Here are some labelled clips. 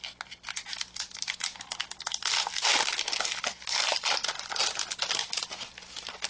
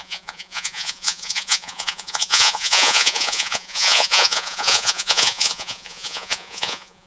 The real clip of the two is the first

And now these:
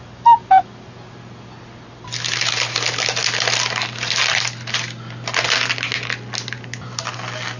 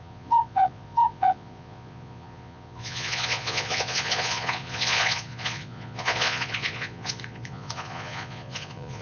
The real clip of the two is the first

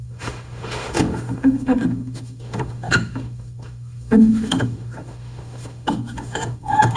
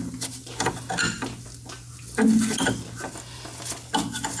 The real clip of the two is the second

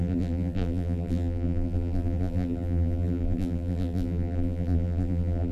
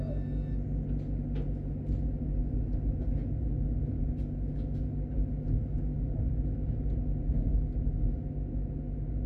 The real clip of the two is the second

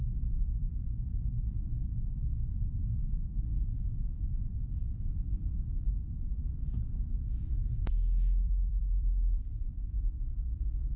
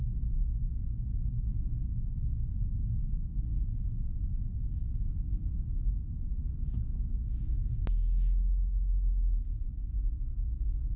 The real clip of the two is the second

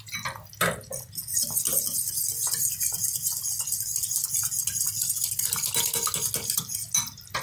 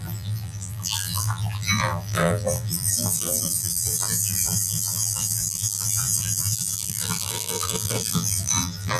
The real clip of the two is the first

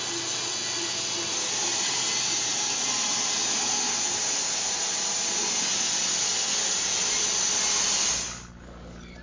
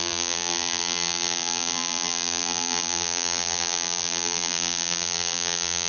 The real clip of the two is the first